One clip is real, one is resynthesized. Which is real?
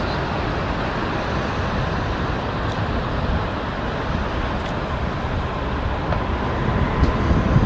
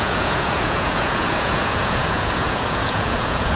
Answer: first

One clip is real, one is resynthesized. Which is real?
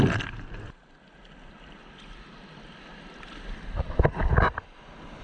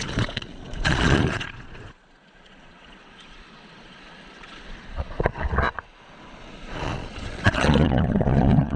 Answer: first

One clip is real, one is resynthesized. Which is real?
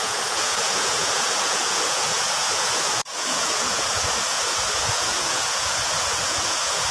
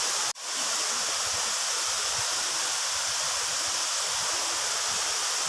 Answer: second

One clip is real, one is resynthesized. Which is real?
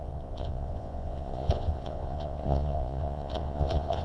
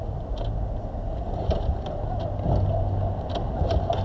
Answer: second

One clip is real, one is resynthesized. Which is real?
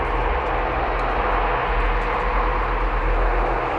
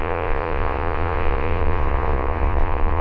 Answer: first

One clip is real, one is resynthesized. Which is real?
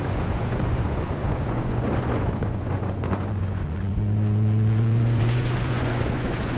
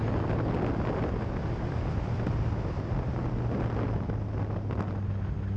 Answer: second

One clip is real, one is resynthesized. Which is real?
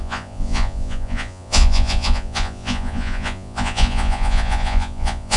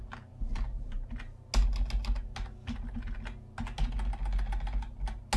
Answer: second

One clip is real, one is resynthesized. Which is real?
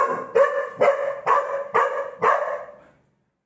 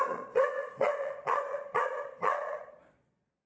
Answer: first